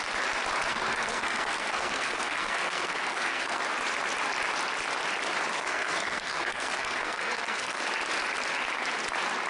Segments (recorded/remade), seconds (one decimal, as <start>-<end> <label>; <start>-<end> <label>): 0.0-0.7 recorded; 0.7-3.6 remade; 3.6-5.6 recorded; 5.6-7.8 remade; 7.8-9.5 recorded